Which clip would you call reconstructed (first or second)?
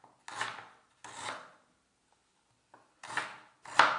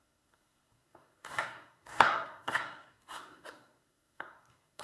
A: second